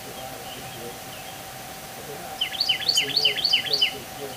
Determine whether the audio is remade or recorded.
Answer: recorded